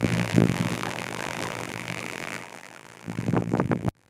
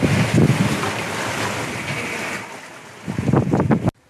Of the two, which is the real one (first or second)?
second